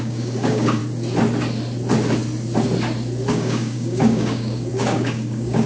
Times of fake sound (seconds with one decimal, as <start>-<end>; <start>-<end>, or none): 0.0-0.8; 3.3-5.7